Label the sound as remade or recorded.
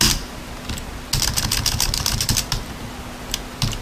recorded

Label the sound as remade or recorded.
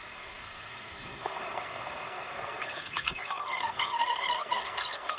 remade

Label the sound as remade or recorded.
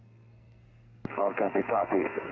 remade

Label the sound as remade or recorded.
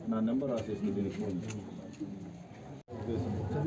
recorded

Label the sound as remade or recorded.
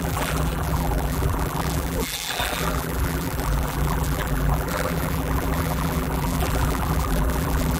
remade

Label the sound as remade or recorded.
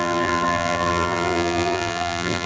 remade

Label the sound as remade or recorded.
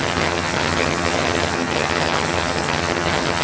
remade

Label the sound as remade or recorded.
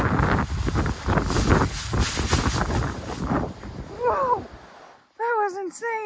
recorded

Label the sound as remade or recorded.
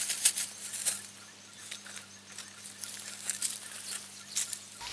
recorded